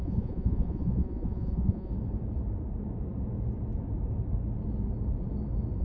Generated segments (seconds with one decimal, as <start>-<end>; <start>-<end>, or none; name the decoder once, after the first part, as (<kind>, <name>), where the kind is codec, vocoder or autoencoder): 0.0-1.9 (vocoder, Vocos)